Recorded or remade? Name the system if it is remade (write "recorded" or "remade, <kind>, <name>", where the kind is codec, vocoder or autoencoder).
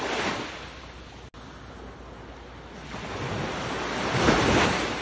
recorded